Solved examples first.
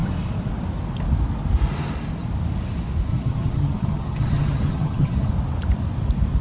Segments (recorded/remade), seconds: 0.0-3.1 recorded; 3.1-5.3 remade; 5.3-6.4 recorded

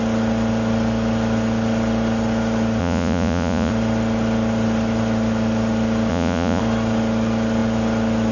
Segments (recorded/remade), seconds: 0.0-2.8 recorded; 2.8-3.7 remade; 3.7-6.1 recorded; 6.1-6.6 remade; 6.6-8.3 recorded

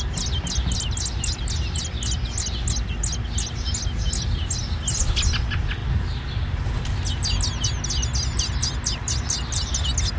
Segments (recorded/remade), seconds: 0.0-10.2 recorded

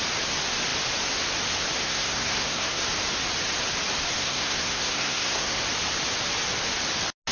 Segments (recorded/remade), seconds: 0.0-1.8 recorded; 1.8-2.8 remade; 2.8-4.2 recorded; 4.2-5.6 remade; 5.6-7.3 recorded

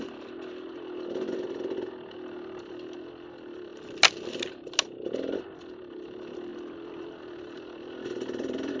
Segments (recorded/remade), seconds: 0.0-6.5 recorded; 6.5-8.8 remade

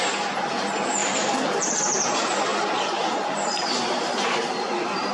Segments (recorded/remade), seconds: 0.0-1.0 recorded; 1.0-1.8 remade; 1.8-2.5 recorded; 2.5-5.1 remade